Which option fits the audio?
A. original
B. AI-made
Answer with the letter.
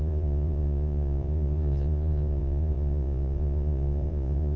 B